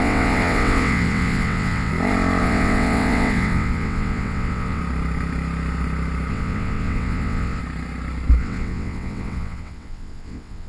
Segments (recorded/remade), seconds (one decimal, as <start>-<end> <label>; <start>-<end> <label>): 0.0-1.9 remade; 1.9-2.4 recorded; 2.4-4.8 remade; 4.8-6.3 recorded; 6.3-7.6 remade; 7.6-8.4 recorded; 8.4-10.7 remade